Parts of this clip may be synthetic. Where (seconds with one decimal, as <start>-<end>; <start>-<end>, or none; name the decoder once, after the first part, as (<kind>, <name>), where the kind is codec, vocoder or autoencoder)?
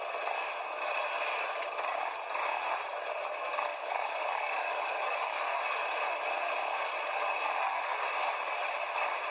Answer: 3.7-5.6 (codec, DAC)